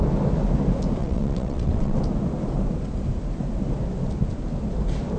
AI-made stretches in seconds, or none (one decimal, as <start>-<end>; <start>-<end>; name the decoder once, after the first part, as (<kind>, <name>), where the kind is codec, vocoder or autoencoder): 1.0-2.0 (vocoder, WaveNeXt)